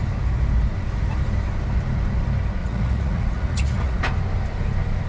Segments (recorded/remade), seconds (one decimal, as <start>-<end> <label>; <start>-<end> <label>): 0.0-2.6 recorded; 2.6-4.0 remade; 4.0-5.1 recorded